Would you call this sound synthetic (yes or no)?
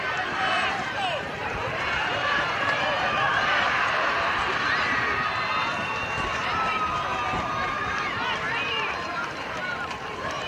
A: yes